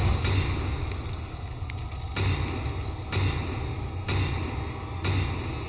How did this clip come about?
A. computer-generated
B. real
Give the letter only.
B